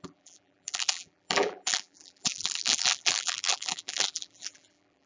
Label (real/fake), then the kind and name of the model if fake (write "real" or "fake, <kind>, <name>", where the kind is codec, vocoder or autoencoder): fake, vocoder, BigVGAN v2